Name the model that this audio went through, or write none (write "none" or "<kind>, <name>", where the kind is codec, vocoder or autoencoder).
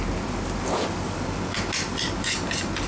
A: none